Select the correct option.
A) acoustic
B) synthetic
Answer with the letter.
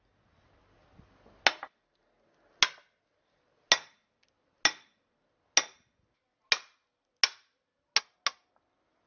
A